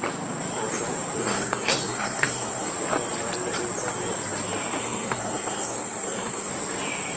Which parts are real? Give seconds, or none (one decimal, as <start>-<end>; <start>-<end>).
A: 0.0-1.2; 2.7-4.8; 6.5-7.2